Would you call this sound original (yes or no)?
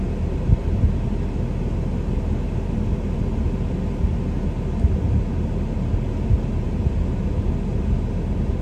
yes